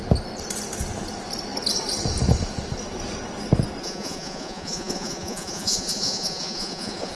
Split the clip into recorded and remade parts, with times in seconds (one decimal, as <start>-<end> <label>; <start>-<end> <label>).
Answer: 0.0-3.8 recorded; 3.8-7.1 remade